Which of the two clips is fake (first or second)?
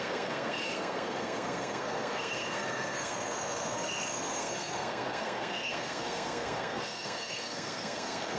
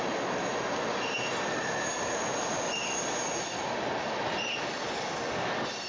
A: first